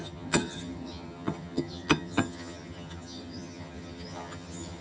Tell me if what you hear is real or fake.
fake